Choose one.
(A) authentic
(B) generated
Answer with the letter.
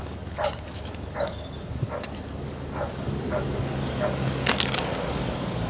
B